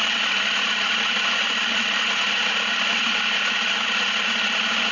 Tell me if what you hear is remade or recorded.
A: recorded